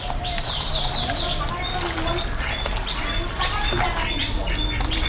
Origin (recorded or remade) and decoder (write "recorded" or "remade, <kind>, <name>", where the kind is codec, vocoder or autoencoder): recorded